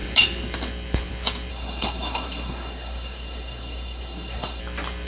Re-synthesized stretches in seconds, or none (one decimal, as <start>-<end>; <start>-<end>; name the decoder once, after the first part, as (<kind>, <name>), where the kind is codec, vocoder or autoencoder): 1.5-4.6 (codec, SNAC)